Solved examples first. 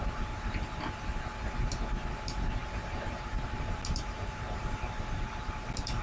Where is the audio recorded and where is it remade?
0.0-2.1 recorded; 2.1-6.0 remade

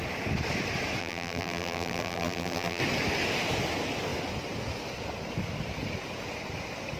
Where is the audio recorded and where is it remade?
0.0-1.0 recorded; 1.0-2.8 remade; 2.8-7.0 recorded

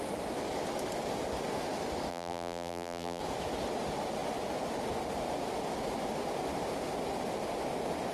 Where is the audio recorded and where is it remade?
0.0-2.1 recorded; 2.1-3.2 remade; 3.2-8.1 recorded

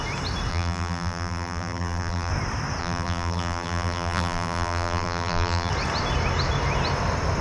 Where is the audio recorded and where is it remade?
0.0-0.5 recorded; 0.5-2.3 remade; 2.3-2.8 recorded; 2.8-5.7 remade; 5.7-7.4 recorded